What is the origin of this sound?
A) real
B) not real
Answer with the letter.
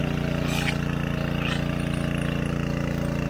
A